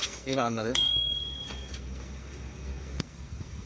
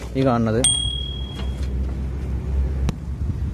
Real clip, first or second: second